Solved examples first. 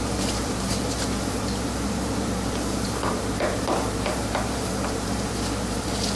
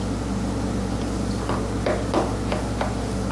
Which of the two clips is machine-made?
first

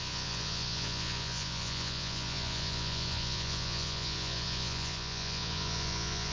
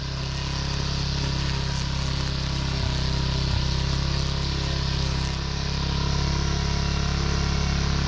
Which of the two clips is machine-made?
first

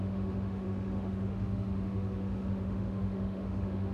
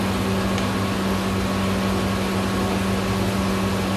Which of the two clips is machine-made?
first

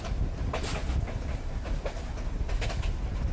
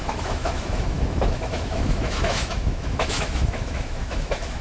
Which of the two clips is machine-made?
second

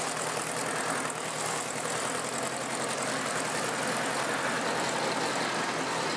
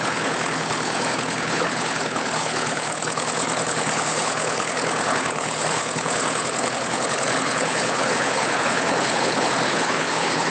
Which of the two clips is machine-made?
second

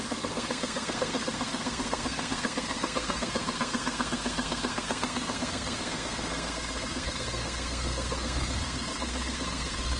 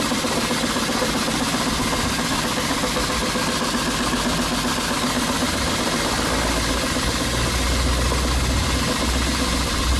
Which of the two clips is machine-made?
first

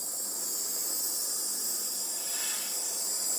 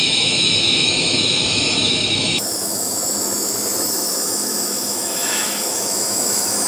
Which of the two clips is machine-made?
second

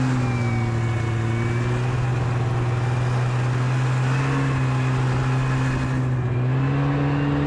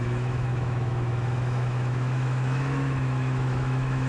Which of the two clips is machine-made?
second